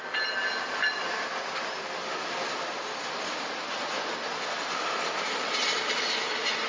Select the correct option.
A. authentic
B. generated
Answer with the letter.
A